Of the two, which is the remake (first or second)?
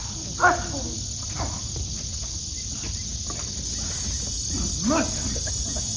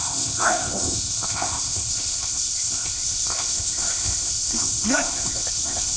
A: second